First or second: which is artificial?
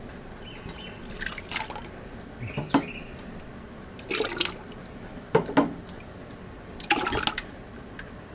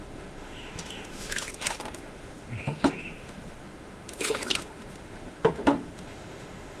second